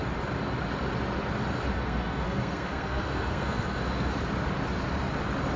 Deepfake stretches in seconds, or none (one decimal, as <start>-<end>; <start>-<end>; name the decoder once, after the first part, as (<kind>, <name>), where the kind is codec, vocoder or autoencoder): 1.7-4.1 (codec, SNAC)

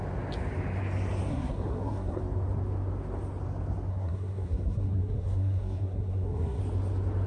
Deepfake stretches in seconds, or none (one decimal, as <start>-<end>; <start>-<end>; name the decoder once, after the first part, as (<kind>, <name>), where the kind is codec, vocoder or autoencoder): 1.3-2.2 (codec, SNAC); 3.9-6.6